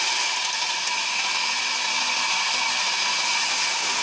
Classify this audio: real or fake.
real